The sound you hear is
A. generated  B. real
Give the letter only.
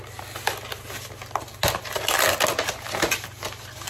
B